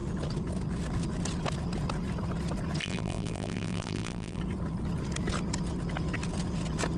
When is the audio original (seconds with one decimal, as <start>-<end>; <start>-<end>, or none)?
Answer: 0.0-2.8; 4.4-7.0

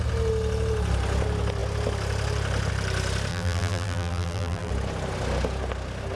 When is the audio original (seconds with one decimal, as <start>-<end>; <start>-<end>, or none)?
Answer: 0.0-3.3; 4.7-6.2

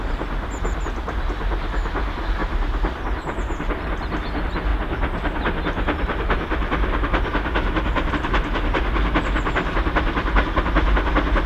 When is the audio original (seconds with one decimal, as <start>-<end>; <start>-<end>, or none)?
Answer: 0.0-2.4; 3.6-11.5